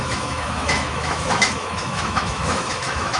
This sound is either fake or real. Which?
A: fake